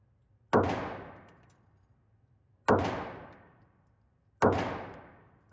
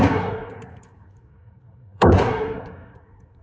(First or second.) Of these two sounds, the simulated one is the second